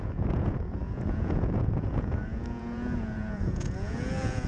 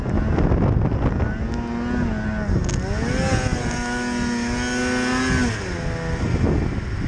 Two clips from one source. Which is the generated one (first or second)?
first